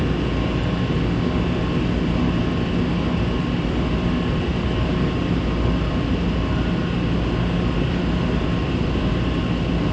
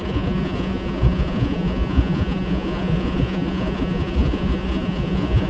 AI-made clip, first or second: second